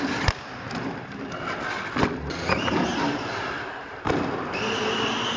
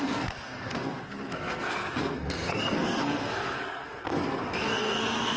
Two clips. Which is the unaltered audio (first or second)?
first